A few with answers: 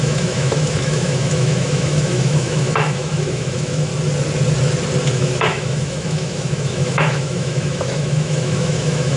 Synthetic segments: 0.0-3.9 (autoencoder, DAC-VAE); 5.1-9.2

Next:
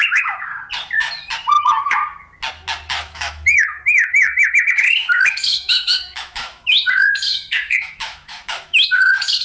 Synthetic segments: 0.0-0.5 (autoencoder, DAC-VAE); 1.5-2.0; 3.0-9.4